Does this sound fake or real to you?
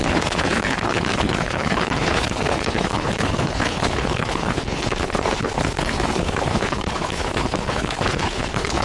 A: fake